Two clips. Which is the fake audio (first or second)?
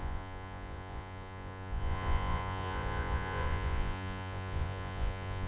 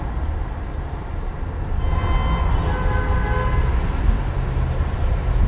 first